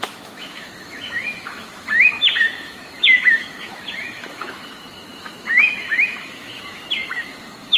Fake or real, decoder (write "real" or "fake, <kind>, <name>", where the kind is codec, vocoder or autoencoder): fake, autoencoder, DAC-VAE